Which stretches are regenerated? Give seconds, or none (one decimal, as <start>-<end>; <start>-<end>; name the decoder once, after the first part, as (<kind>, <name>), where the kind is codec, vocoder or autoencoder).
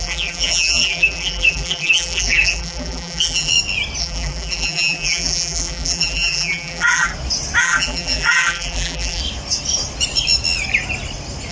0.0-3.5 (vocoder, BigVGAN v2); 4.0-7.1; 7.6-9.2